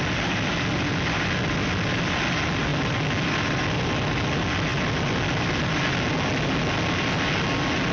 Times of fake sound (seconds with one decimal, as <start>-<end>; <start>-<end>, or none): none